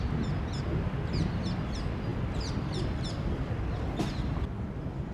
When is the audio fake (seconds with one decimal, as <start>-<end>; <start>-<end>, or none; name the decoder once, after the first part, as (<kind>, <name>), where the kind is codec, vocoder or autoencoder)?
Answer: 2.1-4.0 (vocoder, BigVGAN v2)